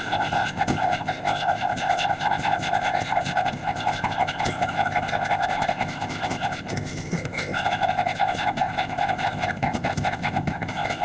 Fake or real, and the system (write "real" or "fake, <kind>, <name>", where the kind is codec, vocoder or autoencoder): fake, codec, ZipCodec